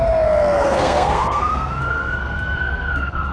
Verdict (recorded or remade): remade